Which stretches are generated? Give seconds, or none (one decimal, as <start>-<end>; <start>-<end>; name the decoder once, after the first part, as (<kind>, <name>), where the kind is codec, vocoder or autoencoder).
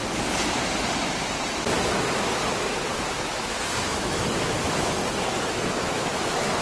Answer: 3.1-5.0 (autoencoder, DAC-VAE); 5.5-6.6